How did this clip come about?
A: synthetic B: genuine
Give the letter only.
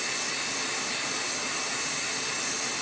B